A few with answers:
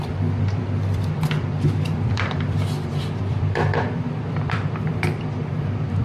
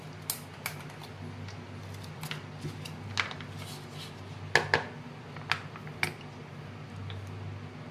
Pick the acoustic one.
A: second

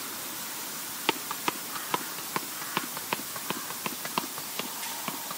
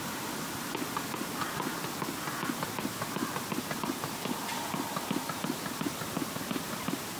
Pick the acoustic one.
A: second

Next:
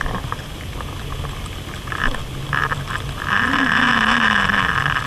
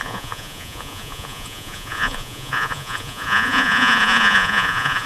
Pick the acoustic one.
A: first